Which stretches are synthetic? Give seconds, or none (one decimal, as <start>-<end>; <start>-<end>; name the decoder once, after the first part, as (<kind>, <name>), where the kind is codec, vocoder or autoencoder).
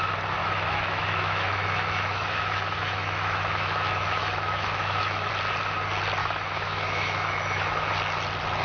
0.4-5.3 (autoencoder, DAC-VAE); 6.2-7.9